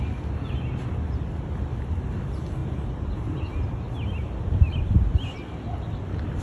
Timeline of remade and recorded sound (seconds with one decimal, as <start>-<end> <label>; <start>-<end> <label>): 0.0-6.4 recorded

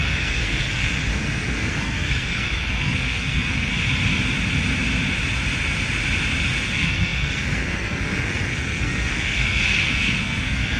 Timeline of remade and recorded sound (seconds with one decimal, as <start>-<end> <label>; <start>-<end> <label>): 0.0-3.7 remade; 3.7-6.6 recorded; 6.6-10.8 remade

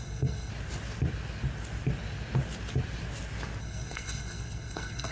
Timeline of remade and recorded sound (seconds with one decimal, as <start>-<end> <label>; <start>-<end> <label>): 0.0-0.5 remade; 0.5-3.6 recorded; 3.6-5.1 remade

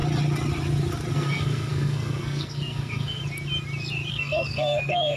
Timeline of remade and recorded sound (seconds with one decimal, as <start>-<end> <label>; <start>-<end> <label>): 0.0-1.1 recorded; 1.1-3.2 remade; 3.2-4.1 recorded; 4.1-5.2 remade

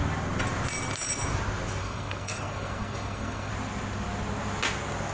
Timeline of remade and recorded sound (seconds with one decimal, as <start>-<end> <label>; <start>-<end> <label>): 0.0-1.8 recorded; 1.8-3.5 remade; 3.5-5.1 recorded

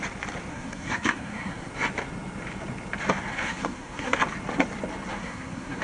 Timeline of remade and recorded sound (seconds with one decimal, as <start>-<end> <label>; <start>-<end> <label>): 0.0-0.5 recorded; 0.5-1.7 remade; 1.7-3.3 recorded; 3.3-4.2 remade; 4.2-5.1 recorded; 5.1-5.8 remade

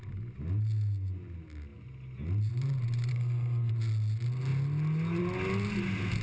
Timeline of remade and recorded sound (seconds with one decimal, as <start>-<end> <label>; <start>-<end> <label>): 0.0-3.1 recorded; 3.1-3.7 remade; 3.7-6.2 recorded

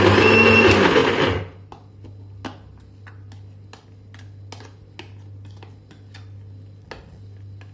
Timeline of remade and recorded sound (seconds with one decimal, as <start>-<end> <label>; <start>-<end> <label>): 0.0-7.7 recorded